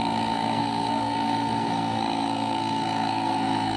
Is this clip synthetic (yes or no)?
yes